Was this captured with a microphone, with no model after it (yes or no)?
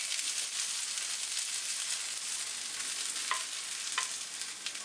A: yes